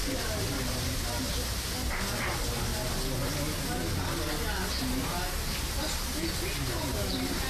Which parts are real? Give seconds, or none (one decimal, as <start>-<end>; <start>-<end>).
1.6-7.5

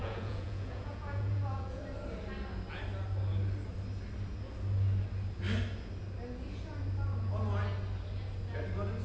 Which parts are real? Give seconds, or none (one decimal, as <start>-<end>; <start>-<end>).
1.8-9.0

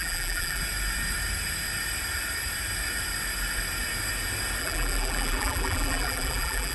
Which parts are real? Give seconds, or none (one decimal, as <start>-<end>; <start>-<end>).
0.6-4.6